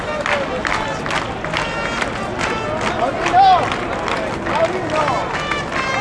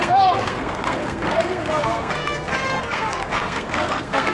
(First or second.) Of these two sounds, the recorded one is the first